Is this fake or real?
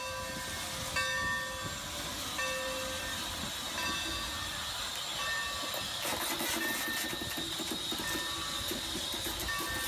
real